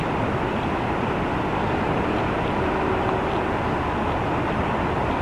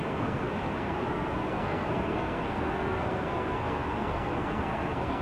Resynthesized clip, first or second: second